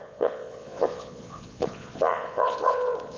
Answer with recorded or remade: remade